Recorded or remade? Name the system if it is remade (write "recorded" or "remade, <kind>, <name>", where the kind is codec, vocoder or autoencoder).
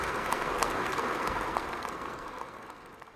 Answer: remade, codec, SNAC